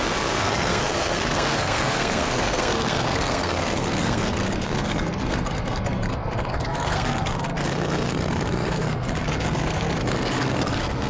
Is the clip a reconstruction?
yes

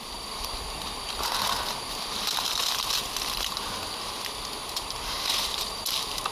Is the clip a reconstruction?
no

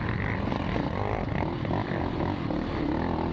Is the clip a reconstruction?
no